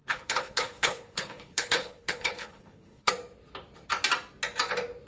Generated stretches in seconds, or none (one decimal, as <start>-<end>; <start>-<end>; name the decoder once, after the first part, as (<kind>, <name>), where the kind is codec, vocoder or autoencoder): 0.0-3.1 (codec, HILCodec)